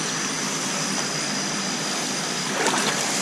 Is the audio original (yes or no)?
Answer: yes